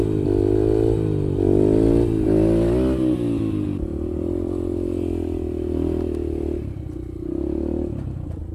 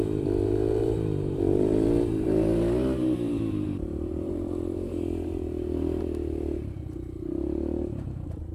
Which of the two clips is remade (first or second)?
second